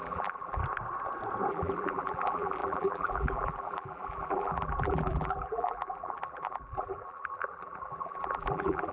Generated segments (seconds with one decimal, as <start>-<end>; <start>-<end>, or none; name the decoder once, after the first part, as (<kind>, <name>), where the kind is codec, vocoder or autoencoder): 0.0-0.6 (vocoder, BigVGAN v2); 1.5-8.9